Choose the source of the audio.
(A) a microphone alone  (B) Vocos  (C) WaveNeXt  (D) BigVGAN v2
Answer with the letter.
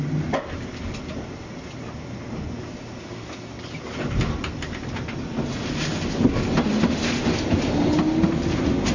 A